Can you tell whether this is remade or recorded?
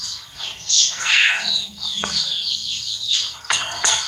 remade